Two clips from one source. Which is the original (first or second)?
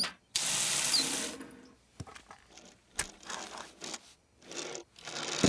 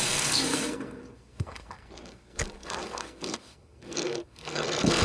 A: first